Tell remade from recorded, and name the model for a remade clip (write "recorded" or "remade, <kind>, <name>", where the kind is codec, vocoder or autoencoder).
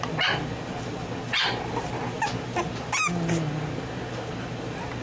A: recorded